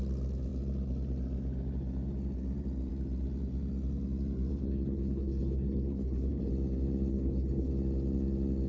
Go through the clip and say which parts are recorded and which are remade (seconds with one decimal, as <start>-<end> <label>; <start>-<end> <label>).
0.0-4.5 recorded; 4.5-6.5 remade; 6.5-7.1 recorded; 7.1-7.7 remade; 7.7-8.7 recorded

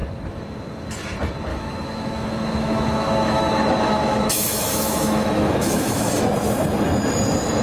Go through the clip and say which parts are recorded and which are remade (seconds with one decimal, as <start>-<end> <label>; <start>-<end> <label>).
0.0-1.5 recorded; 1.5-6.1 remade; 6.1-7.6 recorded

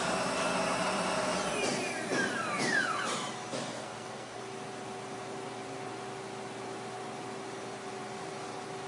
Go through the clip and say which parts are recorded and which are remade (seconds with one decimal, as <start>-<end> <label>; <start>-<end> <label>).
0.0-3.7 recorded; 3.7-4.4 remade; 4.4-8.9 recorded

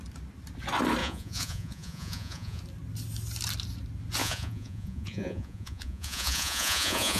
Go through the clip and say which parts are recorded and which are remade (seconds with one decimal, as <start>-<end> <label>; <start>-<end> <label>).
0.0-1.0 recorded; 1.0-2.6 remade; 2.6-4.2 recorded; 4.2-7.2 remade

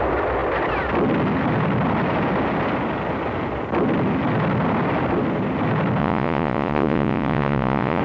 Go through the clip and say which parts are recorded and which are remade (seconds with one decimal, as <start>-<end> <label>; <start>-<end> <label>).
0.0-6.0 recorded; 6.0-8.0 remade

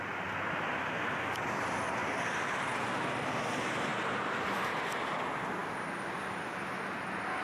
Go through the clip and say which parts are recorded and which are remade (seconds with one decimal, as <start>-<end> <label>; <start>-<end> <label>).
0.0-7.4 recorded

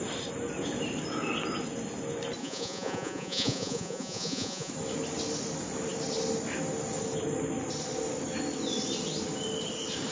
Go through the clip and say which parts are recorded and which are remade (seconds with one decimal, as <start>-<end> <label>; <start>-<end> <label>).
0.0-2.4 recorded; 2.4-4.7 remade; 4.7-10.1 recorded